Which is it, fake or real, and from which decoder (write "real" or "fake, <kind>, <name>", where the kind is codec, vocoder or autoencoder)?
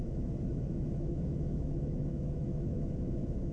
fake, autoencoder, DAC-VAE